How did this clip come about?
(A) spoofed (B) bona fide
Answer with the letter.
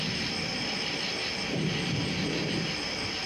A